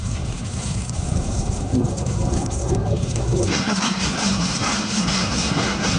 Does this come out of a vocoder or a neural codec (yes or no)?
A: yes